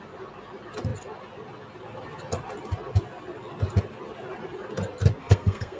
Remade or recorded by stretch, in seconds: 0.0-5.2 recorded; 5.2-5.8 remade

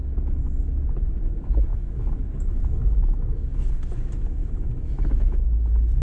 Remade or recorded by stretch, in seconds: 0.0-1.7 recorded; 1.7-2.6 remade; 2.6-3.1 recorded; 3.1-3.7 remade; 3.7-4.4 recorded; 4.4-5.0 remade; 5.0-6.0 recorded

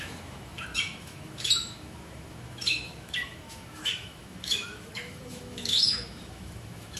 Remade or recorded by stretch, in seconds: 0.0-7.0 remade

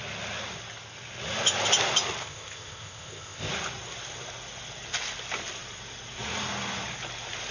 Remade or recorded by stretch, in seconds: 0.0-2.2 recorded; 2.2-3.5 remade; 3.5-7.5 recorded